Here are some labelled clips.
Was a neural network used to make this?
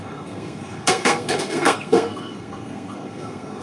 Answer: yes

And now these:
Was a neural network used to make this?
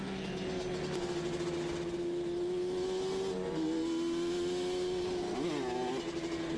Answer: no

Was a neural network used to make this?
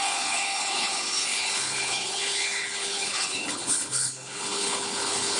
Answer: yes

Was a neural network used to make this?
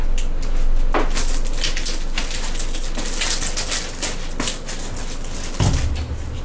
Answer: no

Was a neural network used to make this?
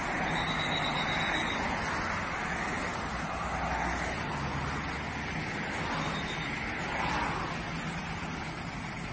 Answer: no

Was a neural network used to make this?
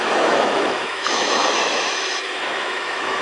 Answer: yes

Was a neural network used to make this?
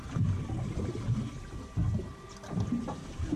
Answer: no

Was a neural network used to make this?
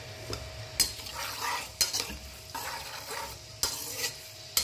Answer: no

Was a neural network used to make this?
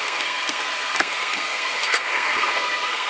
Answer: yes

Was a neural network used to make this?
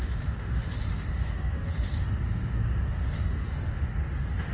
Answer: yes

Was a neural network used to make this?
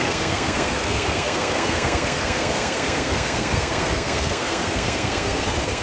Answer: yes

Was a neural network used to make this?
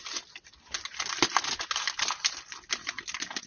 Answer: no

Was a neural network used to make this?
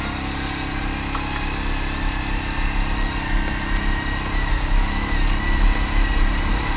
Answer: no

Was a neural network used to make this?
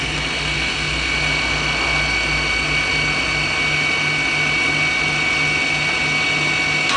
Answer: no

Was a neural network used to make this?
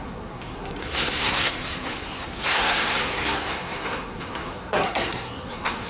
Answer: yes